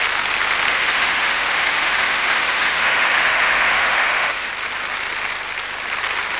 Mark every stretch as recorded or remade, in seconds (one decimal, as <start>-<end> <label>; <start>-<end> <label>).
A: 0.0-0.7 recorded; 0.7-4.5 remade; 4.5-6.4 recorded